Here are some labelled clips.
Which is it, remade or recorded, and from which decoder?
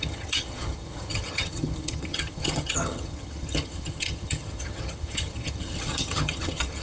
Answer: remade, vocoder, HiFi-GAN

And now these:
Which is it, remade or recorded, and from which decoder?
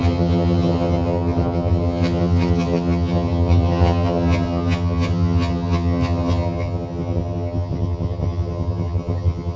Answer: remade, vocoder, HiFi-GAN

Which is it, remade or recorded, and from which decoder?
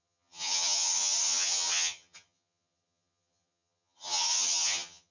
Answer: remade, vocoder, HiFi-GAN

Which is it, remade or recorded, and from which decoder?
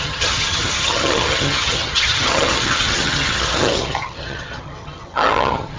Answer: remade, vocoder, HiFi-GAN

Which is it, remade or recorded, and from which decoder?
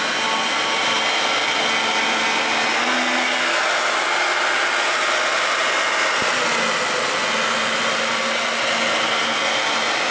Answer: recorded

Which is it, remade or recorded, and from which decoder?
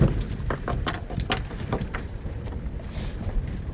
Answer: recorded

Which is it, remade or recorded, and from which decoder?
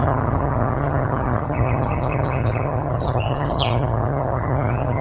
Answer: remade, vocoder, HiFi-GAN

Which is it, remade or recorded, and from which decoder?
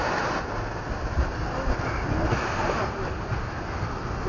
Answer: recorded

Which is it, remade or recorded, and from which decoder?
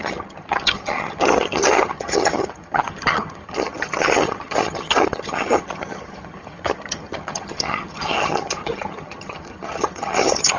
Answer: remade, vocoder, HiFi-GAN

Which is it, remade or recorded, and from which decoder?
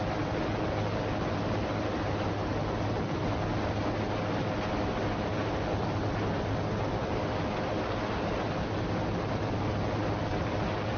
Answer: recorded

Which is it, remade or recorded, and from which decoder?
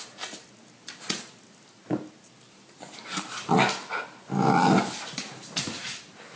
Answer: recorded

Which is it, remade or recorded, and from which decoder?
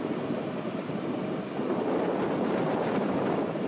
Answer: recorded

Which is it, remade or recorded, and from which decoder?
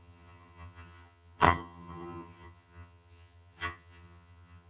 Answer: remade, vocoder, HiFi-GAN